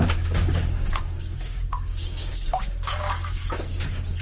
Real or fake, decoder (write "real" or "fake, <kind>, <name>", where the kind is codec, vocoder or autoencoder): fake, codec, DAC